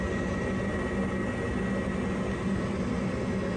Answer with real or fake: real